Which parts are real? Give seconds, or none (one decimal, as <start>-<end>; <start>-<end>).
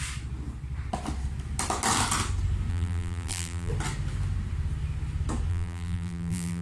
0.0-2.7; 3.7-5.5